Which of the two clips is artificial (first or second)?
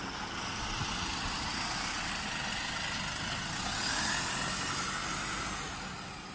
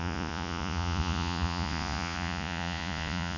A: second